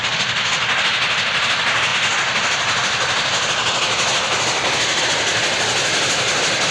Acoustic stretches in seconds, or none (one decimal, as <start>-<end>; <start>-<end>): 0.0-6.7